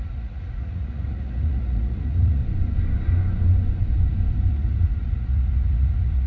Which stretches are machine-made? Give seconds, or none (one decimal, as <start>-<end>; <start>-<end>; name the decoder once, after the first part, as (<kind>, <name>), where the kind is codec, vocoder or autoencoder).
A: 0.0-2.4 (vocoder, Vocos); 4.5-6.3

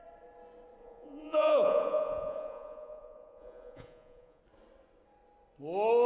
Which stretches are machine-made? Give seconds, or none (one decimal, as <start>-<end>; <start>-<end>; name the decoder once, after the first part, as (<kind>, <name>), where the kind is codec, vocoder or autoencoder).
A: 0.8-4.4 (vocoder, Vocos)

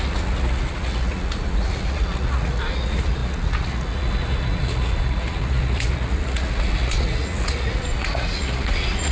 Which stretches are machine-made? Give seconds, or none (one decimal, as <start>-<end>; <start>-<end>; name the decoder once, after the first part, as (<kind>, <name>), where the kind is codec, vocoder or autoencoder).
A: 0.0-9.1 (vocoder, Vocos)

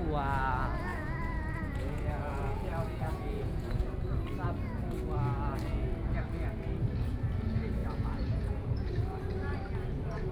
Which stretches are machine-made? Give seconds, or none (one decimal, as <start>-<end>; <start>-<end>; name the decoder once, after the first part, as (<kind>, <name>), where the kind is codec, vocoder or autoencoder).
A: 0.9-3.8 (vocoder, Vocos); 7.8-8.9

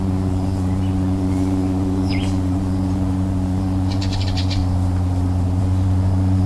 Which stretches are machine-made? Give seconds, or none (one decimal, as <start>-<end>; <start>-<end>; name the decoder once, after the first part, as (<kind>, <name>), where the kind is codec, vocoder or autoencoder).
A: 0.0-4.6 (vocoder, Vocos); 5.6-6.5